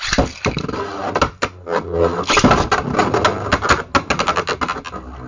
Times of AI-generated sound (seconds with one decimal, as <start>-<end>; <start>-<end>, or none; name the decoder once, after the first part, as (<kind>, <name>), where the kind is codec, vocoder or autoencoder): none